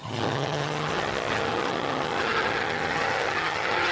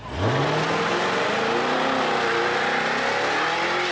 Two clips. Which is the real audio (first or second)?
second